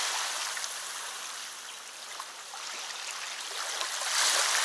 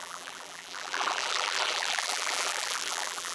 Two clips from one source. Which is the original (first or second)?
first